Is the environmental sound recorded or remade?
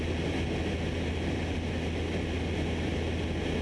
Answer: recorded